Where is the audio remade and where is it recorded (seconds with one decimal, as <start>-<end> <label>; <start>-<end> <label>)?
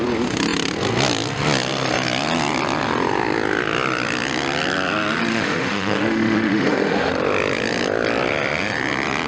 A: 0.0-5.3 recorded; 5.3-7.1 remade; 7.1-9.3 recorded